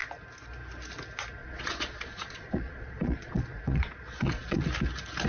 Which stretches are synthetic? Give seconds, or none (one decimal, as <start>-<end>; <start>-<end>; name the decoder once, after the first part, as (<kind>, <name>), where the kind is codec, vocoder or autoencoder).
1.4-4.6 (vocoder, Vocos)